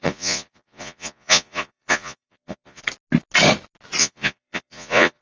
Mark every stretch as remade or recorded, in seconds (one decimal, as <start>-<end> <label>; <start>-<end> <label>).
0.0-2.8 remade; 2.8-4.0 recorded; 4.0-5.2 remade